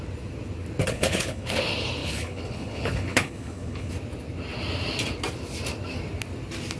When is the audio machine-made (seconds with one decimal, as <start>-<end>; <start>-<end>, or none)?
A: 0.8-1.6; 2.0-3.9